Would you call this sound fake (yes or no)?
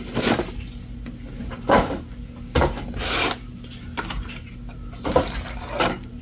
no